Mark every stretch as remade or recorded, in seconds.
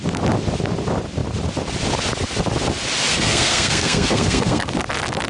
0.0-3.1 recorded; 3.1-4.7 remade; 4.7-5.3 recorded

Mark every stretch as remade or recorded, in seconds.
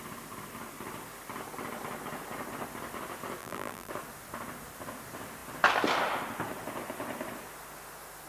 0.0-3.4 recorded; 3.4-3.9 remade; 3.9-8.3 recorded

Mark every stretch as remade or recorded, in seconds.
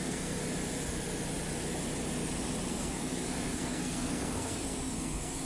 0.0-0.4 remade; 0.4-2.7 recorded; 2.7-5.5 remade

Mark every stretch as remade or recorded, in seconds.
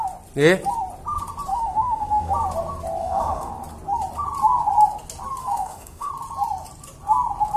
0.0-1.5 recorded; 1.5-2.3 remade; 2.3-3.0 recorded; 3.0-3.5 remade; 3.5-5.4 recorded; 5.4-6.1 remade; 6.1-7.6 recorded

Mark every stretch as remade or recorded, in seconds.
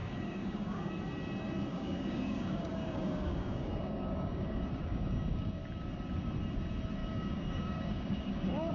0.0-0.9 remade; 0.9-1.7 recorded; 1.7-5.6 remade; 5.6-7.0 recorded; 7.0-8.7 remade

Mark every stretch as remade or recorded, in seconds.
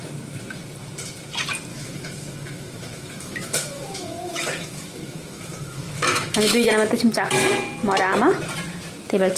0.0-1.7 recorded; 1.7-6.7 remade; 6.7-9.4 recorded